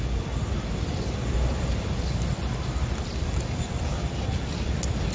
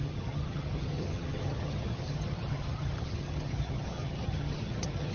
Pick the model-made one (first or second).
second